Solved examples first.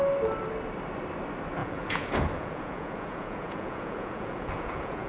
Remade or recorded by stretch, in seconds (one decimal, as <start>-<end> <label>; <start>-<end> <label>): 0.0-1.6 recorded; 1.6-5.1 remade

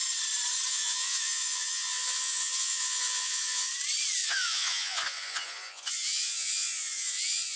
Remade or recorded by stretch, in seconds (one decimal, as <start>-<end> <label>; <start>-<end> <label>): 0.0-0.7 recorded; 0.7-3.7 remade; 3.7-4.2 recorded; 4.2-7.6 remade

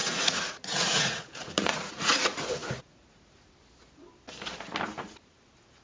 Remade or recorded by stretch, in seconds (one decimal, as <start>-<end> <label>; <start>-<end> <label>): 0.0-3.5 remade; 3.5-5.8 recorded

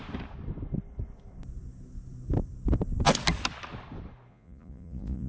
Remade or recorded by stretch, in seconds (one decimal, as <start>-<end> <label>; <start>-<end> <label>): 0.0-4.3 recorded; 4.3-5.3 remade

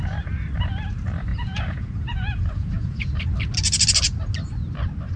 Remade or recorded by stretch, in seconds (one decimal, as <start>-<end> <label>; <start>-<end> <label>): 0.0-1.3 recorded; 1.3-3.2 remade; 3.2-5.2 recorded

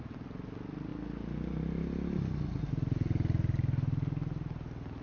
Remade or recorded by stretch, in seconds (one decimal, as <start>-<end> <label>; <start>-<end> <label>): 0.0-5.0 recorded